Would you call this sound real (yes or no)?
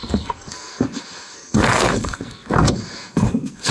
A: no